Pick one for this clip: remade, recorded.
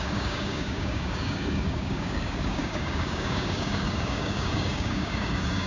remade